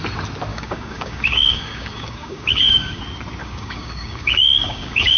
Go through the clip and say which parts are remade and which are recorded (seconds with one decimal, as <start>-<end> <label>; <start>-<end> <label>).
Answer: 0.0-0.5 recorded; 0.5-3.0 remade; 3.0-3.4 recorded; 3.4-5.2 remade